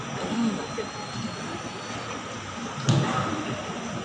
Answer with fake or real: real